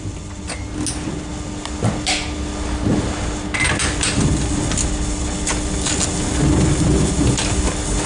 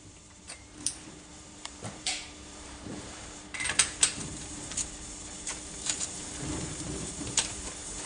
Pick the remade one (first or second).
second